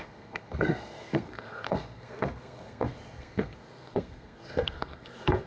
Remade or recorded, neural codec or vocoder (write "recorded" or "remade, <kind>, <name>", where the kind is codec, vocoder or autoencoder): remade, codec, SNAC